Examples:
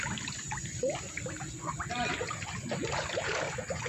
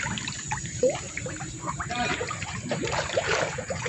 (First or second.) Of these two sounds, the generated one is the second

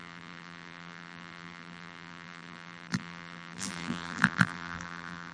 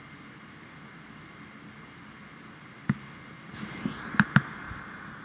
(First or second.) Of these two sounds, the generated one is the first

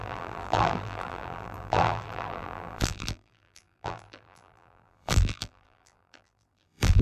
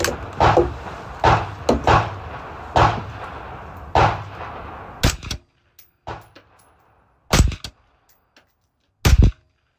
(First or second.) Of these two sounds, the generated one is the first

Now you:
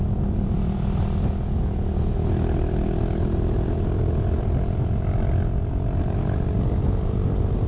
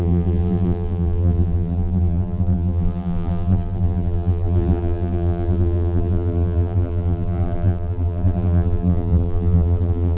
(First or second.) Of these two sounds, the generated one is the second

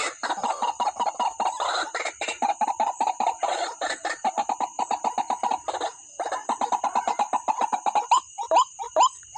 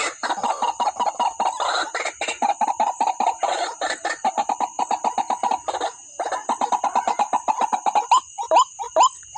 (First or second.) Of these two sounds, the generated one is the first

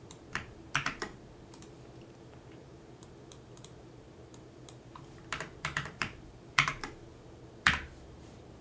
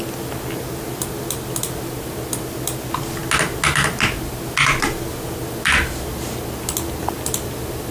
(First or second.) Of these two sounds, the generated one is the first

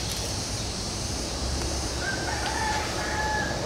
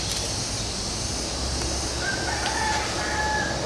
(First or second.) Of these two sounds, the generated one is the first